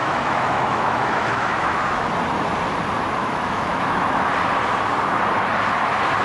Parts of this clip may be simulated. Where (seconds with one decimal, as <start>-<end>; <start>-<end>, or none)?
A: 0.0-2.1; 3.2-4.3